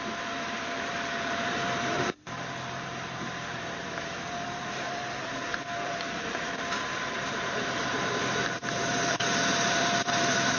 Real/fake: fake